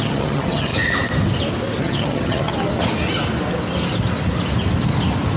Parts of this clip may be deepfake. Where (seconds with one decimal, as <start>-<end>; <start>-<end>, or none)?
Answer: 0.0-0.7; 1.8-2.5